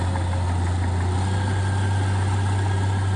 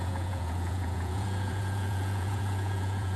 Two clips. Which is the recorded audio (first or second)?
first